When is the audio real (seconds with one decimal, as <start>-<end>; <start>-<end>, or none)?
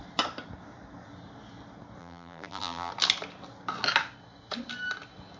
0.0-2.0; 2.9-5.4